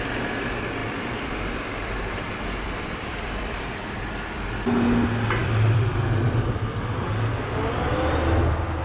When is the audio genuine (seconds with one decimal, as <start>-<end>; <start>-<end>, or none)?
0.0-0.8; 4.5-5.4; 6.4-8.8